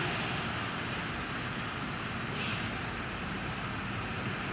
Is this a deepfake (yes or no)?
yes